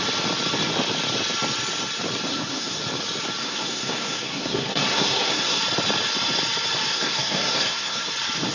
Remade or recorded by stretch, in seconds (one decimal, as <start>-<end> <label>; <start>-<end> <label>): 0.0-2.3 recorded; 2.3-2.8 remade; 2.8-3.4 recorded; 3.4-5.6 remade; 5.6-6.9 recorded; 6.9-8.1 remade; 8.1-8.5 recorded